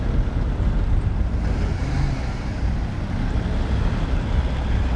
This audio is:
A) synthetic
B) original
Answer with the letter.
B